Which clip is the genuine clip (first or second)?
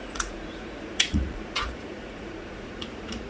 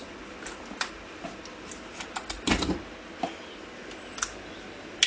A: second